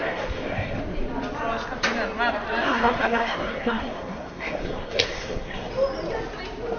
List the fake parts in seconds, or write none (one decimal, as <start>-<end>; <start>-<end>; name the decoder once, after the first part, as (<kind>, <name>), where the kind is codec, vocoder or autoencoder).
0.0-0.8 (codec, SNAC); 2.6-5.7